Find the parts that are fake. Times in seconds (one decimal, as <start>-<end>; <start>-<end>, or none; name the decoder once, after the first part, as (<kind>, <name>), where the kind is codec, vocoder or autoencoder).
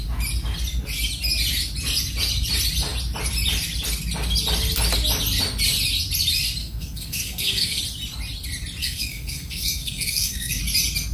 6.6-7.8 (codec, SNAC); 8.8-10.6